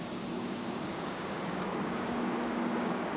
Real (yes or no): no